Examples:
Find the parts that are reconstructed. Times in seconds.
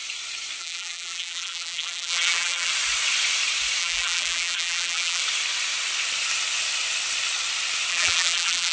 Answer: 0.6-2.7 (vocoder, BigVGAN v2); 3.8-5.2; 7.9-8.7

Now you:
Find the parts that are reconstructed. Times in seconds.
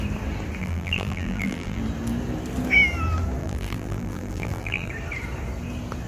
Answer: 0.6-1.8 (vocoder, BigVGAN v2); 3.4-4.9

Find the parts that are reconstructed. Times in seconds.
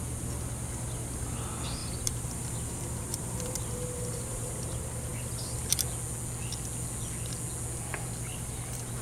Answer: 1.8-4.6 (vocoder, BigVGAN v2)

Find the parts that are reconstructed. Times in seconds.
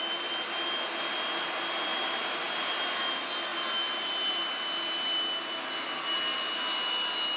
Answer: 1.9-2.8 (vocoder, BigVGAN v2)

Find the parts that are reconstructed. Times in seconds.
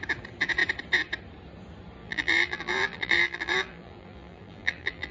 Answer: 2.0-5.1 (vocoder, BigVGAN v2)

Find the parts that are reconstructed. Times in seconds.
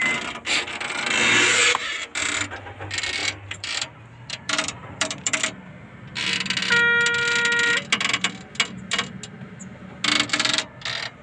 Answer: 3.2-5.4 (vocoder, BigVGAN v2)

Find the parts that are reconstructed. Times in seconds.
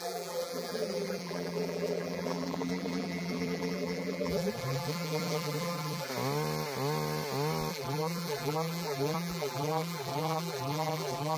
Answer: 0.0-6.1 (vocoder, BigVGAN v2); 7.7-11.4